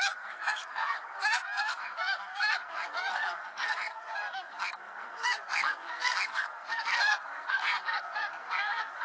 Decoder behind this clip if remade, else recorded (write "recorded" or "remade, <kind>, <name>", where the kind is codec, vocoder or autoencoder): remade, codec, SNAC